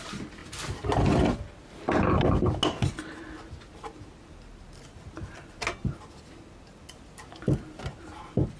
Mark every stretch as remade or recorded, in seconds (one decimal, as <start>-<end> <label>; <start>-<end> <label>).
0.0-8.6 recorded